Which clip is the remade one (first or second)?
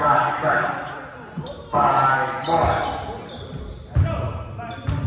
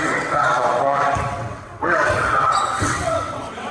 second